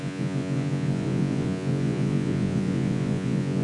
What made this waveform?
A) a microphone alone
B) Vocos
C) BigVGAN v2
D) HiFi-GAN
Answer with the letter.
B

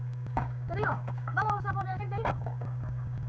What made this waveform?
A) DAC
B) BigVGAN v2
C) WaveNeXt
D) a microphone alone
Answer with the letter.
A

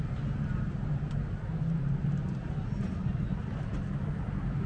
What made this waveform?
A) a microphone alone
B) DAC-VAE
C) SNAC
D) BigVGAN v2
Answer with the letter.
A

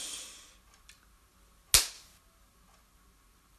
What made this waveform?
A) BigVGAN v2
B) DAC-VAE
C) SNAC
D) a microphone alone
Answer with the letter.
D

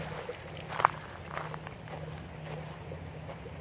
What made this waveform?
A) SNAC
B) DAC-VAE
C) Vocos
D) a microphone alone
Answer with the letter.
D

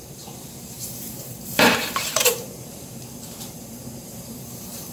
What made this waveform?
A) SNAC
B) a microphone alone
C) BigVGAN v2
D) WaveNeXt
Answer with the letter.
C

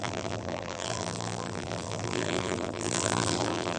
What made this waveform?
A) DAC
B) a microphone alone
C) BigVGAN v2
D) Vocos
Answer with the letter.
C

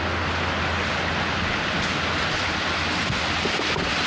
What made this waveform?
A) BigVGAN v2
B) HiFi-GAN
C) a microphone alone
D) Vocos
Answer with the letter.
C